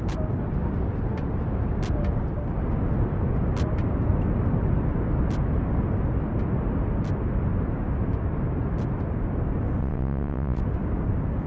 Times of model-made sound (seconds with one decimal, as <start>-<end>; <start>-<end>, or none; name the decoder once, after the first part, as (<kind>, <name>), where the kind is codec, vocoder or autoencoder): 9.8-10.6 (vocoder, WaveNeXt)